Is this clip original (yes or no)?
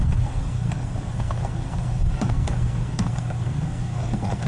no